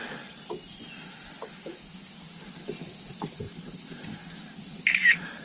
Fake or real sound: real